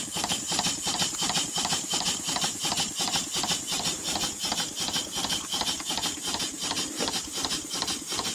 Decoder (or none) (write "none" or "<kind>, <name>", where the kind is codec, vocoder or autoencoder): none